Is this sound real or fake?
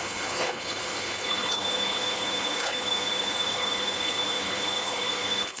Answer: fake